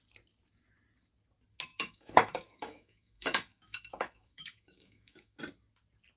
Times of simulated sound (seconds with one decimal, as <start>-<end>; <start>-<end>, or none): 1.7-5.4